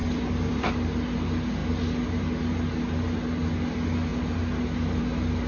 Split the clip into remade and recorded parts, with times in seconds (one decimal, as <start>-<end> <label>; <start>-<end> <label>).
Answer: 0.0-0.7 remade; 0.7-5.5 recorded

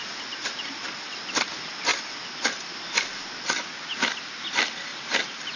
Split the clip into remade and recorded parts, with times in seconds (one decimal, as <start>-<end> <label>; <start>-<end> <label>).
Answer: 0.0-4.9 remade; 4.9-5.6 recorded

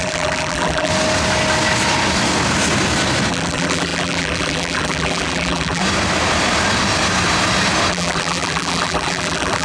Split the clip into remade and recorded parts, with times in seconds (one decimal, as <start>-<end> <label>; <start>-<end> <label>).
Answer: 0.0-0.9 remade; 0.9-3.3 recorded; 3.3-5.8 remade; 5.8-7.9 recorded; 7.9-9.6 remade

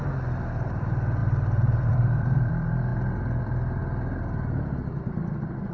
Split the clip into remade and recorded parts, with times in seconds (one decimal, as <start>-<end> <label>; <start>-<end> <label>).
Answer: 0.0-3.8 remade; 3.8-5.7 recorded